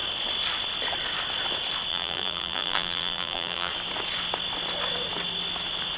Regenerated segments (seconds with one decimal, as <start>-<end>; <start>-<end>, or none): 1.9-3.7